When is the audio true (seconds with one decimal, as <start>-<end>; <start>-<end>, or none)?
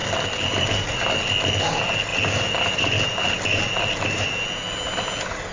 0.0-5.5